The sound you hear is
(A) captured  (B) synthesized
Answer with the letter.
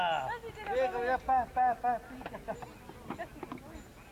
A